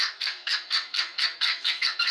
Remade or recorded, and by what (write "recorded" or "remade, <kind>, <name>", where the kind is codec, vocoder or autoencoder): remade, codec, SNAC